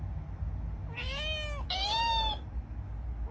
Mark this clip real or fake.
real